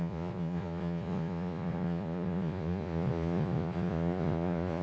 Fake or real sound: fake